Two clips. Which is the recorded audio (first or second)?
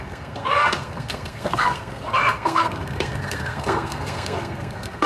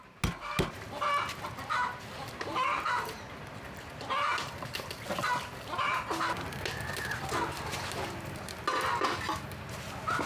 second